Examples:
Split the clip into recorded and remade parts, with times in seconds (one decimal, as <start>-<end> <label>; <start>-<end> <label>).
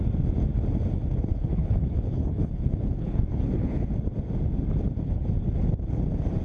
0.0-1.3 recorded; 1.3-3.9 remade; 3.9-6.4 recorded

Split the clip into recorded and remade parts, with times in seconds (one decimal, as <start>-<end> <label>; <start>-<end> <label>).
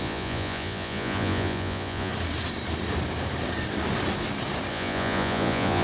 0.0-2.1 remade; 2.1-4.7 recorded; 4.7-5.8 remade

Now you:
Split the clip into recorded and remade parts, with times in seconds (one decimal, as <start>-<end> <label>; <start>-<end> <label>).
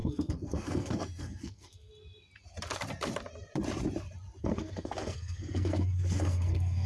0.0-1.9 remade; 1.9-4.4 recorded; 4.4-6.9 remade